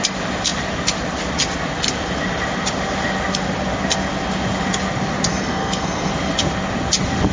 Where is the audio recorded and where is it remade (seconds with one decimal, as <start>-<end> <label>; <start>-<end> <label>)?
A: 0.0-5.3 recorded; 5.3-6.1 remade; 6.1-7.3 recorded